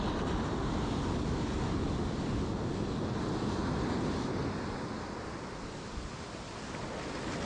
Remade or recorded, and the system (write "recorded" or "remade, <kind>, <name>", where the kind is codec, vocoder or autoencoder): recorded